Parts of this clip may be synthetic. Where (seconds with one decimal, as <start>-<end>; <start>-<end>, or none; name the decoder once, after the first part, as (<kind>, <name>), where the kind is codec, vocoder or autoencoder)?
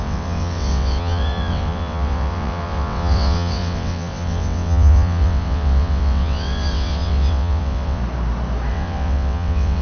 0.0-8.0 (vocoder, WaveNeXt); 8.7-9.8